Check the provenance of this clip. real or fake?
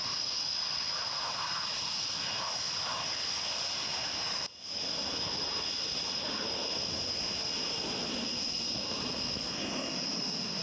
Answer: real